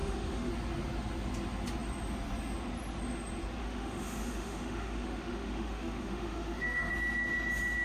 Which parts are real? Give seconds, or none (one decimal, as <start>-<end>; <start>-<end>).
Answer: 0.5-3.6; 6.9-7.8